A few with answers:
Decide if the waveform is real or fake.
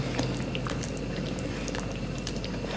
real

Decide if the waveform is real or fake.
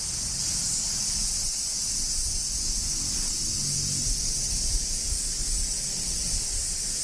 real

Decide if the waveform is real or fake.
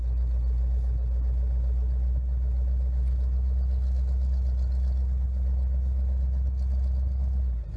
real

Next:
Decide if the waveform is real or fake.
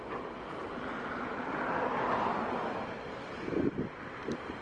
real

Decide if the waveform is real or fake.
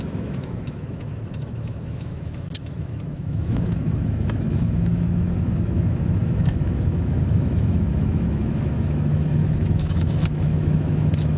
fake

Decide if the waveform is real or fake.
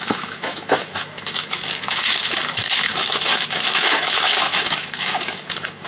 fake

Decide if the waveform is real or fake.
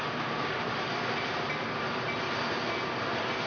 real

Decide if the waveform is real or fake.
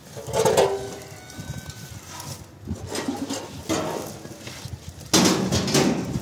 real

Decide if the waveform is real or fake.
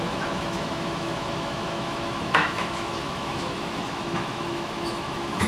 fake